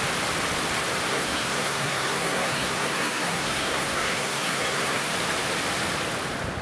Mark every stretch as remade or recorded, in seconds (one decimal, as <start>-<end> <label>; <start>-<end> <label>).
0.0-1.1 recorded; 1.1-5.1 remade; 5.1-6.6 recorded